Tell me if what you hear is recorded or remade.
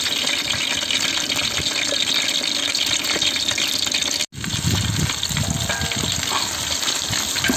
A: recorded